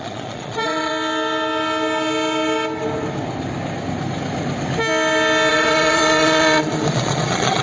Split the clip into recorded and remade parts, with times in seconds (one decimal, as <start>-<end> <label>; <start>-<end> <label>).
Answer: 0.0-0.9 remade; 0.9-5.5 recorded; 5.5-7.6 remade